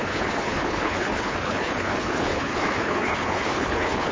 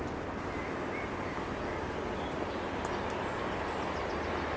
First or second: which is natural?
second